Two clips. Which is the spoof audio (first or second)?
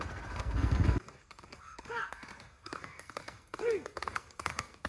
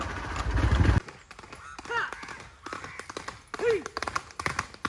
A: first